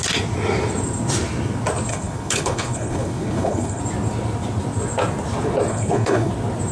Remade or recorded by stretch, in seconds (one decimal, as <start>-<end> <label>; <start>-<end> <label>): 0.0-1.9 recorded; 1.9-3.8 remade; 3.8-5.7 recorded; 5.7-6.3 remade; 6.3-6.7 recorded